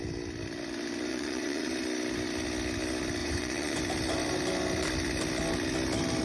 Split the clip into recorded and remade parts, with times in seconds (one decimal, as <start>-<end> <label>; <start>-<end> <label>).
0.0-1.1 recorded; 1.1-1.7 remade; 1.7-3.2 recorded; 3.2-3.8 remade; 3.8-6.2 recorded